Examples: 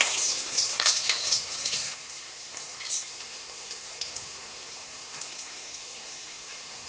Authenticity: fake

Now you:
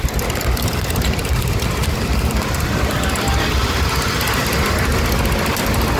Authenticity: real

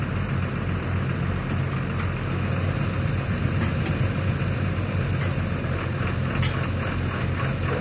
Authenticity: real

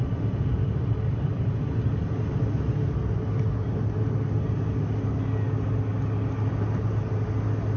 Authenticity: real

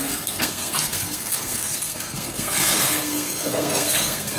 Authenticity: fake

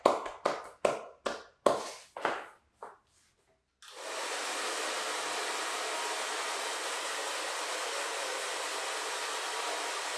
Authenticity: real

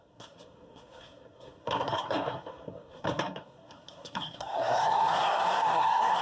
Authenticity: fake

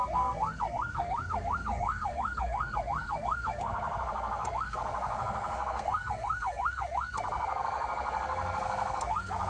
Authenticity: fake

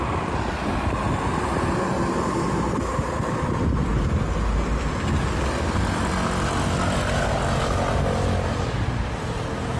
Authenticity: real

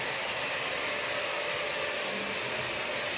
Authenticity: real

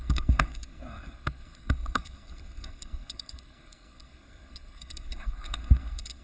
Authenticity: fake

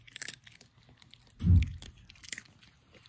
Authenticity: real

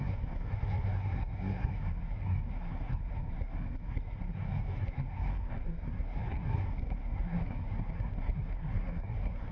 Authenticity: fake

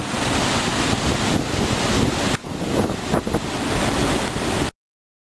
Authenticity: real